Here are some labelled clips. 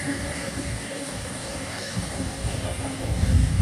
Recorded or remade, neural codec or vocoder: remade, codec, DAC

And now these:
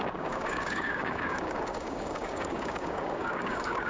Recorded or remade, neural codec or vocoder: remade, codec, DAC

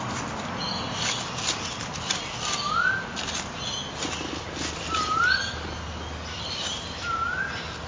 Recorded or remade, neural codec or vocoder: recorded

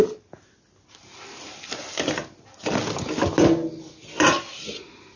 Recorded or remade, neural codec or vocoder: recorded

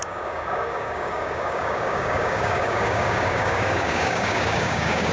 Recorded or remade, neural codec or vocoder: remade, codec, DAC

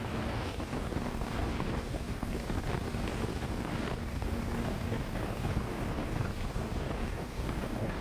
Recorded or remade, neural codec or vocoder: remade, codec, DAC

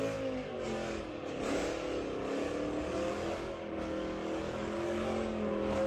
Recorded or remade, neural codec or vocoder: remade, codec, DAC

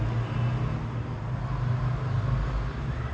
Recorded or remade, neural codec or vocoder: recorded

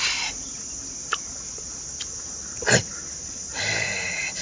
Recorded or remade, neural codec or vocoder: recorded